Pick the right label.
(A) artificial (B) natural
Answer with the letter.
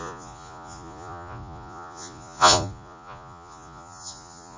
A